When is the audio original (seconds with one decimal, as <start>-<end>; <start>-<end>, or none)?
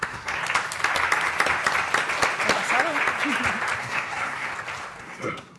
0.4-3.8; 4.5-5.0